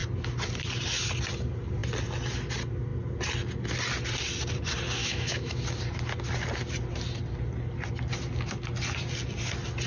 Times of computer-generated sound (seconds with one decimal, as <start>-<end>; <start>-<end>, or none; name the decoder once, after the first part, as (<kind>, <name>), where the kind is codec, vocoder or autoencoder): 5.0-5.6 (autoencoder, DAC-VAE)

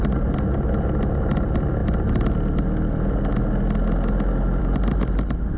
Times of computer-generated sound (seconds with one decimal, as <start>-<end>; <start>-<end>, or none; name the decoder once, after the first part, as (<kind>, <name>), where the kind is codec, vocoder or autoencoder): none

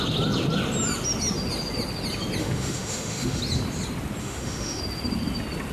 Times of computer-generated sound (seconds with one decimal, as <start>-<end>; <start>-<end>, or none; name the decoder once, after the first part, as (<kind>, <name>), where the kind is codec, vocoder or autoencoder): 2.4-3.4 (autoencoder, DAC-VAE); 4.2-4.8

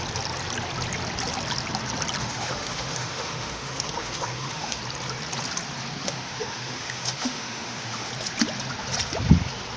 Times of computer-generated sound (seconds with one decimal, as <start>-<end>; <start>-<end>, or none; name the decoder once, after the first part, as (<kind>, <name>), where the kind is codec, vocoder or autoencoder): 2.2-4.8 (autoencoder, DAC-VAE); 6.0-8.1

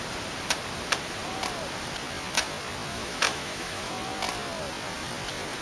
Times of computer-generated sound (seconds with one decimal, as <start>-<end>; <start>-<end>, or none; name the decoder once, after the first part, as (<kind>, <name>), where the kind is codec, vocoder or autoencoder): 2.9-3.9 (autoencoder, DAC-VAE)

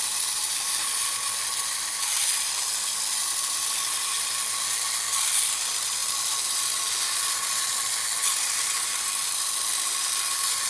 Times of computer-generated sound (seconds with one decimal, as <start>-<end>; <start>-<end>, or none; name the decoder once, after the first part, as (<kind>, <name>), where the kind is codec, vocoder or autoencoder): none

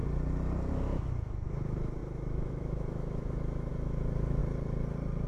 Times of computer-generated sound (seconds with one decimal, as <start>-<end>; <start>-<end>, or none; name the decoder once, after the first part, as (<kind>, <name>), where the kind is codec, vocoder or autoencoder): 0.7-4.4 (autoencoder, DAC-VAE)

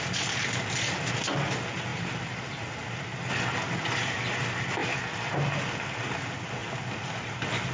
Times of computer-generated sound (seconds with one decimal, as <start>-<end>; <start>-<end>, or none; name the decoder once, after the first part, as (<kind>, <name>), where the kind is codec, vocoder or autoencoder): none